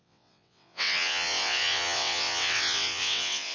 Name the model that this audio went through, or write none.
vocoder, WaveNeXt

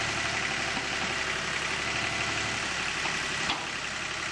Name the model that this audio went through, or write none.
none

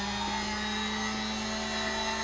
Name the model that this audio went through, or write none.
none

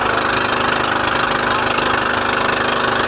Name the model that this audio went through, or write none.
none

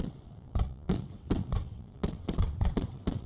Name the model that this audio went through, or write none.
vocoder, WaveNeXt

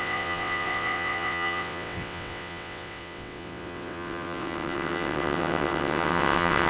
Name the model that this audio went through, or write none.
vocoder, WaveNeXt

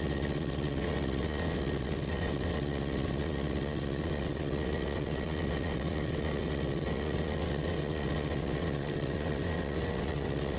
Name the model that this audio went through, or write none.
vocoder, WaveNeXt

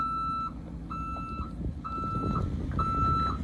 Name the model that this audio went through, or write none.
none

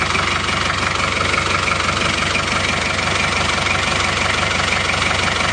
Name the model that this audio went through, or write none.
none